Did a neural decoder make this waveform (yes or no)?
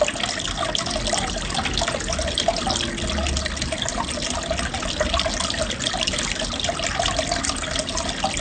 no